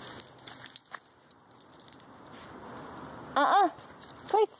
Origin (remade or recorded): recorded